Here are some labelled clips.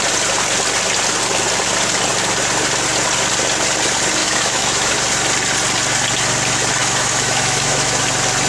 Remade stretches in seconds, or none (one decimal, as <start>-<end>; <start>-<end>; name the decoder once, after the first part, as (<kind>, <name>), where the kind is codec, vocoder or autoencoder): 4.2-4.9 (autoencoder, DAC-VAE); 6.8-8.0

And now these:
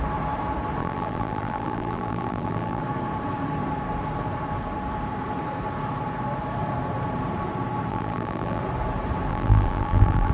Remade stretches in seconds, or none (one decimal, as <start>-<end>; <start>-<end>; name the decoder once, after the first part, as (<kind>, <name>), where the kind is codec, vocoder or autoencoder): 0.8-2.8 (vocoder, BigVGAN v2); 7.9-8.6; 9.3-10.3

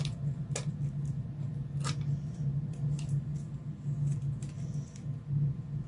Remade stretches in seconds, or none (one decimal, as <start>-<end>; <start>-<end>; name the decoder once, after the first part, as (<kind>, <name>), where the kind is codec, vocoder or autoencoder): none

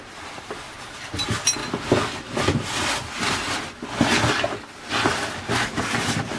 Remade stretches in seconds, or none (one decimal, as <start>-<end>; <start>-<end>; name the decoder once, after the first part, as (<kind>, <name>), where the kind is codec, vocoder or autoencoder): 0.0-1.6 (vocoder, BigVGAN v2); 5.4-6.4